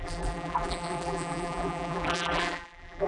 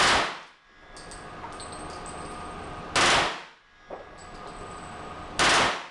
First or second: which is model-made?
first